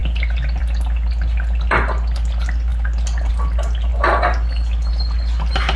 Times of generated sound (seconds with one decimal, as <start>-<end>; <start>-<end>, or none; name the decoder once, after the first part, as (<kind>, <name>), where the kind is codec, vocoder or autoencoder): none